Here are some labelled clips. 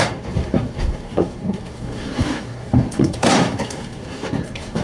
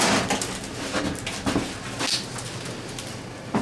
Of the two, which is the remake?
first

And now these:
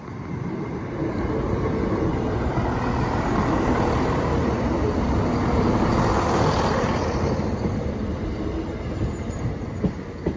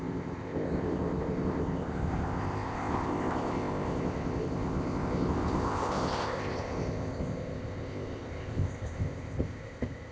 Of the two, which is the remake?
second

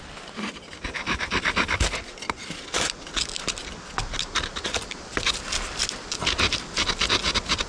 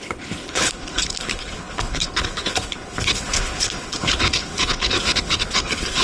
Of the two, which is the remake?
second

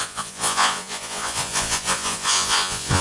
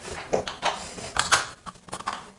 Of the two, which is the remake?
first